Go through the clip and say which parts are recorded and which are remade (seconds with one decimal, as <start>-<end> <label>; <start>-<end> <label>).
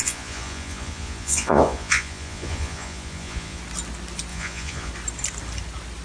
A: 0.0-3.6 remade; 3.6-4.3 recorded; 4.3-4.9 remade; 4.9-6.0 recorded